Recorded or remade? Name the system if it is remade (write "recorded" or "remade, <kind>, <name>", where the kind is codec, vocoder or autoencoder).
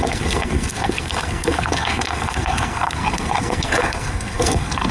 remade, codec, SNAC